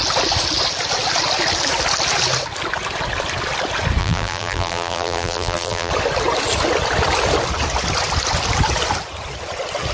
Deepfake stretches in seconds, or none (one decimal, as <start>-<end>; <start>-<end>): 4.0-5.9